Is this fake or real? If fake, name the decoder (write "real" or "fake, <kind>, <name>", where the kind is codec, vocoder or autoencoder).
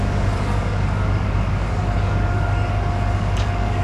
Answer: fake, codec, DAC